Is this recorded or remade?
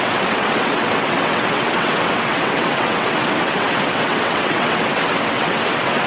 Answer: remade